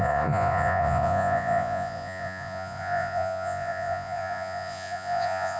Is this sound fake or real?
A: fake